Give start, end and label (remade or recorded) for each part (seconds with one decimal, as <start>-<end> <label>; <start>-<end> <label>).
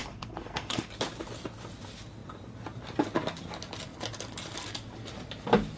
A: 0.0-0.9 remade; 0.9-5.8 recorded